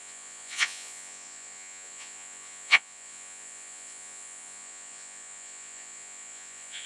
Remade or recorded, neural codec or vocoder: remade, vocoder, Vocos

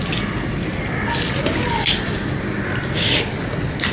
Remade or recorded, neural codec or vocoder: recorded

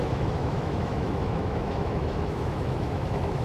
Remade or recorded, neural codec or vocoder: remade, autoencoder, DAC-VAE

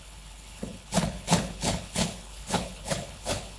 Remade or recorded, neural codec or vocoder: remade, codec, HILCodec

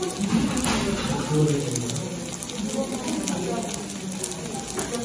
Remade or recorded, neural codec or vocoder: recorded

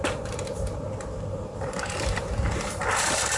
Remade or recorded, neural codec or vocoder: remade, vocoder, BigVGAN v2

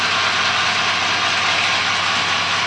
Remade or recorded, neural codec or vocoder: recorded